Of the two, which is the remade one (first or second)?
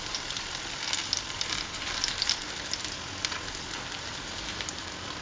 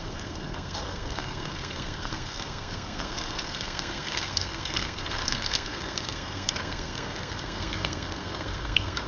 second